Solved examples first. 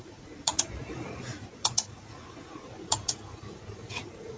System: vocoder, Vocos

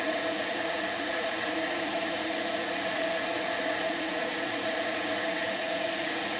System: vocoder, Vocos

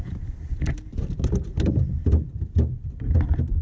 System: none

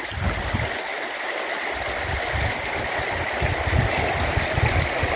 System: none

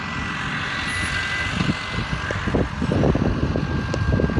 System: none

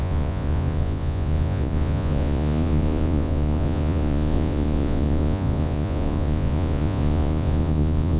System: vocoder, Vocos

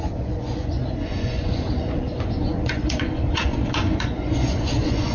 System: vocoder, Vocos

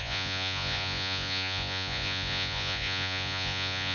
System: vocoder, Vocos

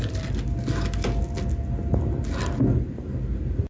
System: none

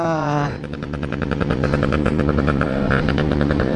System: vocoder, Vocos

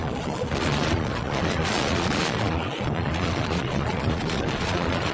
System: vocoder, Vocos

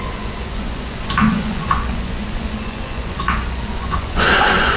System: vocoder, Vocos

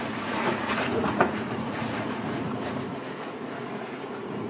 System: vocoder, Vocos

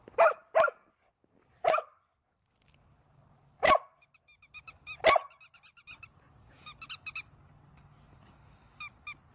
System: none